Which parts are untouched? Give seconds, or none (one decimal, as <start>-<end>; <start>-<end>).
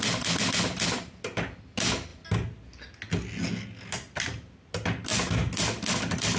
0.0-6.4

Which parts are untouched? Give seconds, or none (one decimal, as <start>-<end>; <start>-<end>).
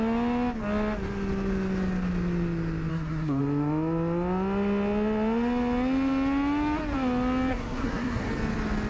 0.0-2.9; 3.4-7.5; 8.3-8.9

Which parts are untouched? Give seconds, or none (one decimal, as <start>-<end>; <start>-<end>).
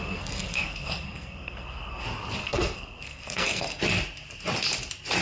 2.0-2.4; 3.8-5.2